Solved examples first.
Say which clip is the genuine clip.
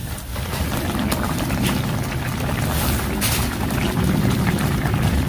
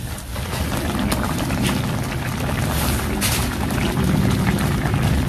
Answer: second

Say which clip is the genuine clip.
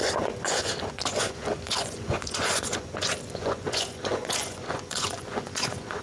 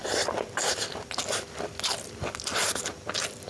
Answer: second